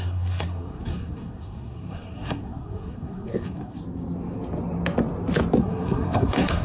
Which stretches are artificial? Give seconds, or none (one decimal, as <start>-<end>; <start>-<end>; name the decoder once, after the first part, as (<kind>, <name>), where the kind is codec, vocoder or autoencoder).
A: 0.0-3.8 (codec, SNAC); 5.6-6.6